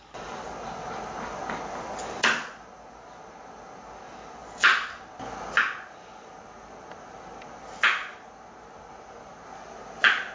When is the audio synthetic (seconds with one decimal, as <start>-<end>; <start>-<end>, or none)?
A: none